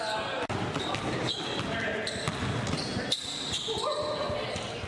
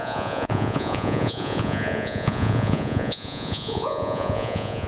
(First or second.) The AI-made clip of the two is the second